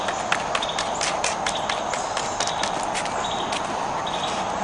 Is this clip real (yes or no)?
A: yes